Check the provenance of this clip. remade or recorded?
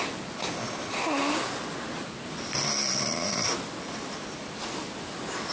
recorded